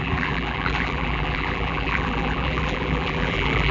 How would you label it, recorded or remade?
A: remade